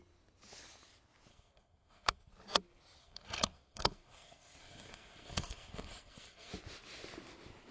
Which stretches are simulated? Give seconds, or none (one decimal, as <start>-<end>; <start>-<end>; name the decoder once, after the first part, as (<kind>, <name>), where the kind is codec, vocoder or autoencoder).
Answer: 1.3-2.3 (codec, SNAC); 3.0-6.5

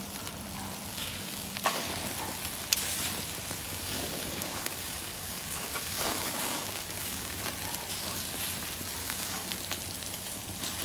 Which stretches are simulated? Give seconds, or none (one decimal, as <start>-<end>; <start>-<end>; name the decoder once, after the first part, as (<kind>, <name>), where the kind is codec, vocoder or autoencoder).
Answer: 0.9-1.8 (codec, DAC); 3.6-7.4; 9.0-9.6

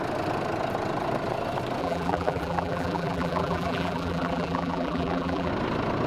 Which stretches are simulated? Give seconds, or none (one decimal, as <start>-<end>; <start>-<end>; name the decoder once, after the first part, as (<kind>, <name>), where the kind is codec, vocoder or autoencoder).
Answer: 1.8-5.5 (vocoder, BigVGAN v2)

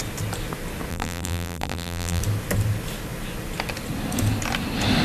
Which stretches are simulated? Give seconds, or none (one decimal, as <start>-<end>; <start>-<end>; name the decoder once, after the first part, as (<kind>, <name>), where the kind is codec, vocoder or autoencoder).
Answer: 0.9-2.2 (vocoder, BigVGAN v2)